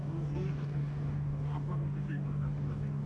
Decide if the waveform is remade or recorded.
remade